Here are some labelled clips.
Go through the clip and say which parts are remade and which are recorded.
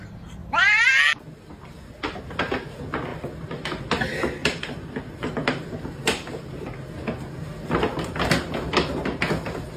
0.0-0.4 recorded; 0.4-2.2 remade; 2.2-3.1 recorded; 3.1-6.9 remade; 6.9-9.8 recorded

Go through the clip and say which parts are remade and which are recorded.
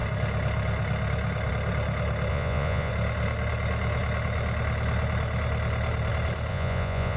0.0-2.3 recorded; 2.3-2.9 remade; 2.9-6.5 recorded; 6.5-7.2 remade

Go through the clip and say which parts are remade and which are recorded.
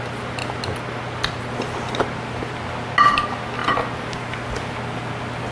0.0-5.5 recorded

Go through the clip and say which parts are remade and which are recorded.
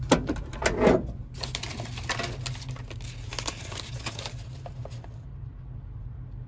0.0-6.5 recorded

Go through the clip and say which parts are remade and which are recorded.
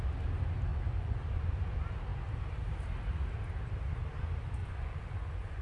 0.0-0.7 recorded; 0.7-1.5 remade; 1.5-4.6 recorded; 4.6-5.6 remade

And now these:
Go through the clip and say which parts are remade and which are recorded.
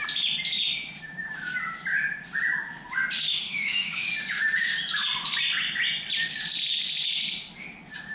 0.0-3.3 recorded; 3.3-4.1 remade; 4.1-8.1 recorded